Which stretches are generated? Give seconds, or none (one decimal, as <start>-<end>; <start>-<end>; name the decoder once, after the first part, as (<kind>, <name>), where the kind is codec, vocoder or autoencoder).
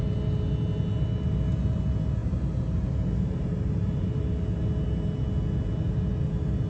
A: 2.2-4.6 (vocoder, BigVGAN v2)